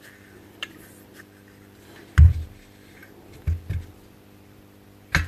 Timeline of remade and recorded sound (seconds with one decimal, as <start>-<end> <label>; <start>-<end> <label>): 0.0-5.3 recorded